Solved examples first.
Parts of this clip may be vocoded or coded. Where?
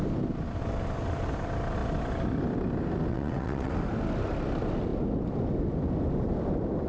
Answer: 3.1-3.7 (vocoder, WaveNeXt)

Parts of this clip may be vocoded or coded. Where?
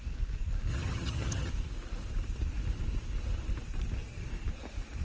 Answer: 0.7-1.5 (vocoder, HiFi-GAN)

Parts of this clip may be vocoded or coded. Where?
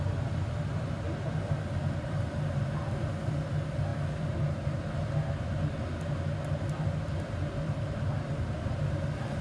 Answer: none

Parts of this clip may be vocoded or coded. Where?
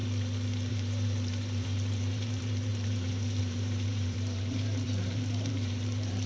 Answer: 0.7-6.3 (vocoder, BigVGAN v2)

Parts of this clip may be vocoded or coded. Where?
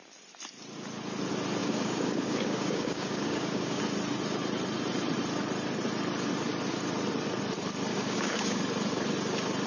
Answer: 1.6-3.8 (codec, DAC); 7.9-8.6